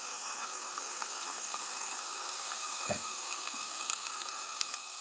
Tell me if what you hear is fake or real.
fake